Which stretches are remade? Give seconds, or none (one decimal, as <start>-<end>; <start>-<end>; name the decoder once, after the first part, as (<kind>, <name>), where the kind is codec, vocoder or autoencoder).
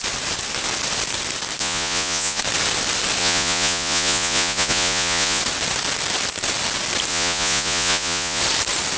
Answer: 1.6-2.4 (vocoder, Vocos); 3.2-5.4; 7.1-8.4